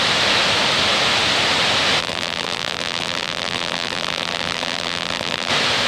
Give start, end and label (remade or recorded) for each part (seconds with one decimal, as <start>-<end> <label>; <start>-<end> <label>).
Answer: 0.0-2.0 recorded; 2.0-5.5 remade; 5.5-5.9 recorded

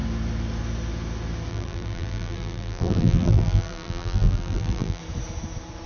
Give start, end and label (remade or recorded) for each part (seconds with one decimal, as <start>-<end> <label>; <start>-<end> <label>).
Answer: 0.0-1.5 recorded; 1.5-5.0 remade; 5.0-5.9 recorded

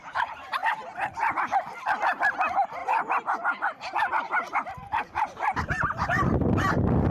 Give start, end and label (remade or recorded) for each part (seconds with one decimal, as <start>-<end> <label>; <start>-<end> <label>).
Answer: 0.0-4.8 recorded; 4.8-5.7 remade; 5.7-7.1 recorded

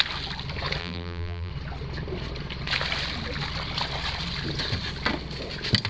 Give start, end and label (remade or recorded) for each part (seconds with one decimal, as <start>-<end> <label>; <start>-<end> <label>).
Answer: 0.0-0.8 recorded; 0.8-1.5 remade; 1.5-5.9 recorded

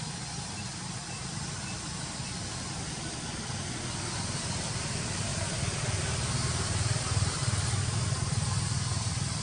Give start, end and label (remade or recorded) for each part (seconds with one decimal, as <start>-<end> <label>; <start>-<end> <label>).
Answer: 0.0-0.7 recorded; 0.7-1.6 remade; 1.6-5.3 recorded; 5.3-9.4 remade